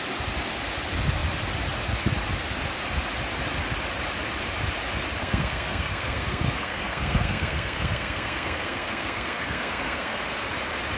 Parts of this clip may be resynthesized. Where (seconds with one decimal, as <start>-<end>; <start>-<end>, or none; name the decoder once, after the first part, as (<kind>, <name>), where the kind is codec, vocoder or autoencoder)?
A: 5.2-10.2 (codec, SNAC)